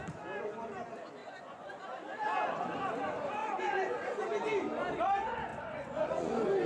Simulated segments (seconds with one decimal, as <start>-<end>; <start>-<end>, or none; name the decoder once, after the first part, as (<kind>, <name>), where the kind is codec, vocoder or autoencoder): 1.2-1.8 (vocoder, Vocos); 3.4-4.2; 5.5-6.3